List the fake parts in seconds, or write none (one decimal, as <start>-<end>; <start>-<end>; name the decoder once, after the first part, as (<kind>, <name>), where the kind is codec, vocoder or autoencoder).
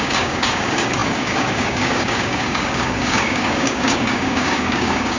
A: 0.0-5.2 (codec, DAC)